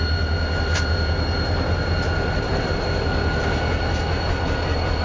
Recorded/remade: recorded